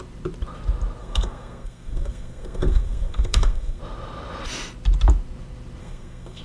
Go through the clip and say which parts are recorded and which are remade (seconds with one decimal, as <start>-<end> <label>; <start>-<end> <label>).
0.0-1.0 recorded; 1.0-3.8 remade; 3.8-5.8 recorded; 5.8-6.4 remade